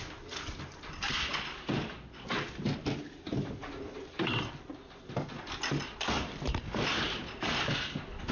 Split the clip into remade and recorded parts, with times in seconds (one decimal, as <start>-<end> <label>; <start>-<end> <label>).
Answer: 0.0-8.3 recorded